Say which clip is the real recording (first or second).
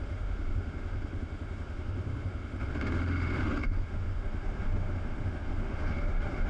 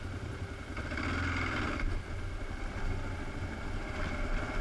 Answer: second